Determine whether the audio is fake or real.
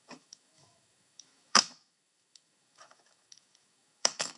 fake